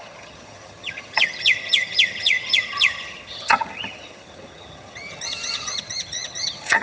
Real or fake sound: fake